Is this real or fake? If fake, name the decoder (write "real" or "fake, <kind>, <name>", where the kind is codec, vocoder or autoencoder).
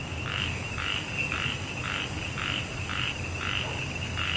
real